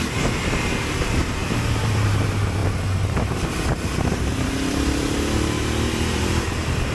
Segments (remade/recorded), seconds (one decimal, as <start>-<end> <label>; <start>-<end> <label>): 0.0-1.4 recorded; 1.4-2.2 remade; 2.2-2.6 recorded; 2.6-6.5 remade; 6.5-6.9 recorded